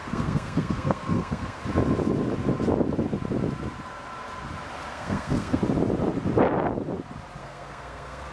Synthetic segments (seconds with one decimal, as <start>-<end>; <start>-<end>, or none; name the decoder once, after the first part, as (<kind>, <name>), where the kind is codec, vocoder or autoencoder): 0.0-1.6 (codec, SNAC); 4.9-5.6; 7.4-8.3